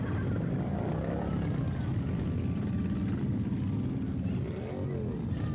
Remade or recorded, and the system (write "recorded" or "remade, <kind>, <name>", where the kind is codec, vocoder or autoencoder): recorded